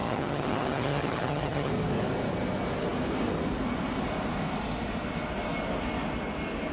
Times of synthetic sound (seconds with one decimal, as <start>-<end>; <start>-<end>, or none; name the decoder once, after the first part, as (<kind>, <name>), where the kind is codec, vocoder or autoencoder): 0.0-1.7 (vocoder, HiFi-GAN)